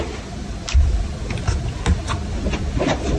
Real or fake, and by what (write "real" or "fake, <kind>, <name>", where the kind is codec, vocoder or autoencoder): real